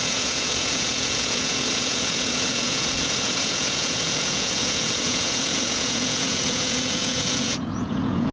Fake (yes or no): yes